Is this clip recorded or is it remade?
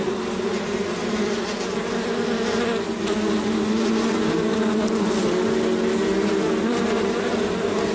recorded